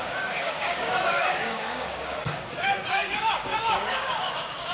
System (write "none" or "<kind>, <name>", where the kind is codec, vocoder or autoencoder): codec, DAC